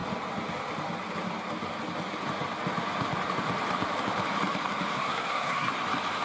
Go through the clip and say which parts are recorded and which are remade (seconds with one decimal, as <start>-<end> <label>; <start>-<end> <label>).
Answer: 0.0-4.9 recorded; 4.9-5.7 remade; 5.7-6.2 recorded